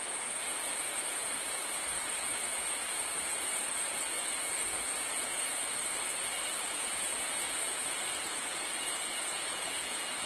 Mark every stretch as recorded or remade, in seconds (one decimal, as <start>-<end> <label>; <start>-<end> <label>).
0.0-5.6 remade; 5.6-6.7 recorded; 6.7-10.3 remade